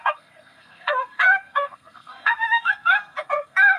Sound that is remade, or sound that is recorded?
remade